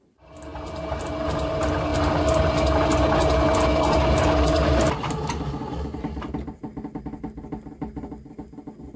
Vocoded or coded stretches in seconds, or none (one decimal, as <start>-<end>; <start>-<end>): none